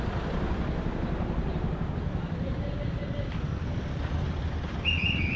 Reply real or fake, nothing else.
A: real